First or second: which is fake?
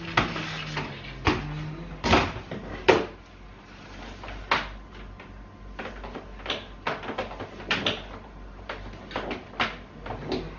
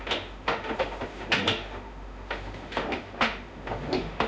second